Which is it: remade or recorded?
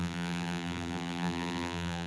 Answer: remade